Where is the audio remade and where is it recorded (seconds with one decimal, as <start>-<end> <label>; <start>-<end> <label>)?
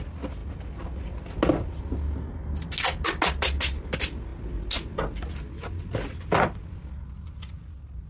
0.0-8.1 recorded